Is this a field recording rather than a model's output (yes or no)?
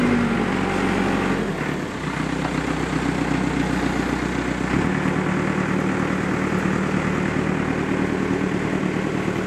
yes